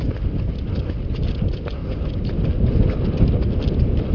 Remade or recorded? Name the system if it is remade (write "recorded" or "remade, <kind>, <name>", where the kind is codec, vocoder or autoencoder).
recorded